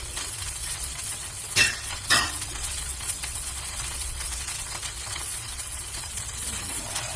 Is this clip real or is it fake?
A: fake